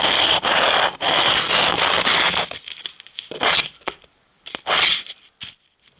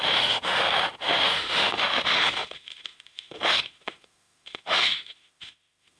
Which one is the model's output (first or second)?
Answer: second